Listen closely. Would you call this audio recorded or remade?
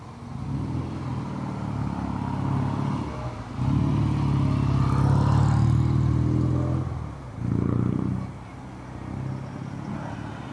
recorded